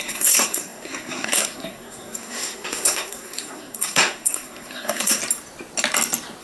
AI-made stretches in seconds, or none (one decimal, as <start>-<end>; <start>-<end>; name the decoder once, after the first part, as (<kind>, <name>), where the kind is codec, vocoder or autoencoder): 0.0-5.2 (codec, SNAC)